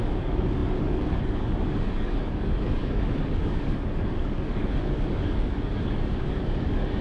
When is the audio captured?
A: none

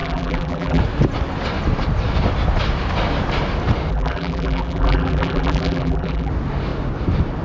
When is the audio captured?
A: 0.8-3.9; 6.3-7.4

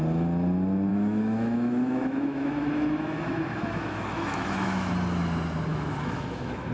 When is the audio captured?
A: 0.0-0.9; 4.9-5.7

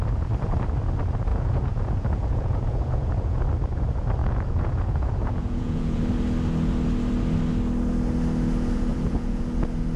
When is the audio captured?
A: 0.0-1.3; 3.4-4.2; 6.0-8.9; 9.4-10.0

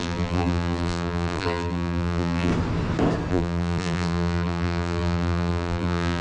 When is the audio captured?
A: 2.5-3.3

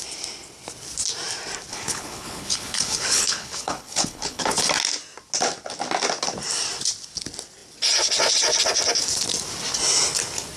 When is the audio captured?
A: 0.0-1.7; 4.5-10.6

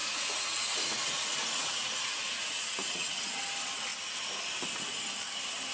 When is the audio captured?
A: 3.4-5.7

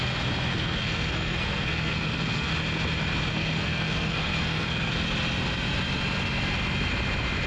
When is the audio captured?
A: 0.0-0.5; 2.5-3.3; 4.9-7.5